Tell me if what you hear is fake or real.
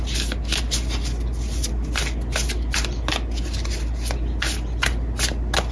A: real